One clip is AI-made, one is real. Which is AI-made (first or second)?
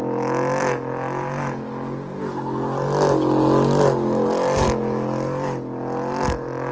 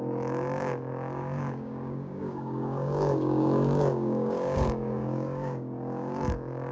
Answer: second